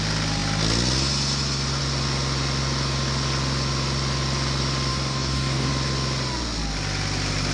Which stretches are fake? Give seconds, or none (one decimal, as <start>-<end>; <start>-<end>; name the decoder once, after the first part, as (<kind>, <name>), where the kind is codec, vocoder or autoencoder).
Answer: 4.9-5.7 (codec, DAC)